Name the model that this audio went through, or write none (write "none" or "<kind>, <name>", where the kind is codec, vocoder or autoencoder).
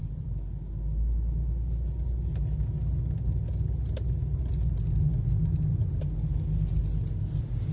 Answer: none